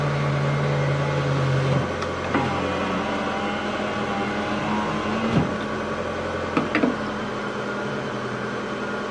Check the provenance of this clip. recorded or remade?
recorded